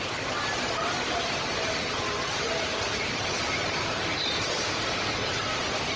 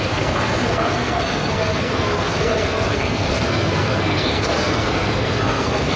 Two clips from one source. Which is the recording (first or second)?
first